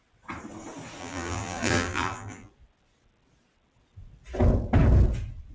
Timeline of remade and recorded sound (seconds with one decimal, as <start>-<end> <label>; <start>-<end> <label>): 0.0-1.0 recorded; 1.0-2.5 remade; 2.5-5.5 recorded